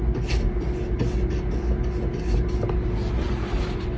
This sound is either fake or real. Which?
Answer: real